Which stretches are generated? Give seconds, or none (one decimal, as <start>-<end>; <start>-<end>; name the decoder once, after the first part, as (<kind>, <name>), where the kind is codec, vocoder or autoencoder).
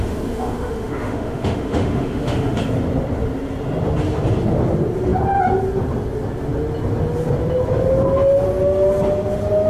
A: 0.0-2.6 (autoencoder, DAC-VAE)